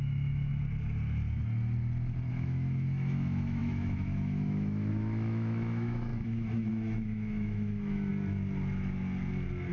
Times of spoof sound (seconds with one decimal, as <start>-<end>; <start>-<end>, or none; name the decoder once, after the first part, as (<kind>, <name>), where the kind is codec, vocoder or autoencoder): 0.0-0.5 (autoencoder, DAC-VAE); 2.3-8.1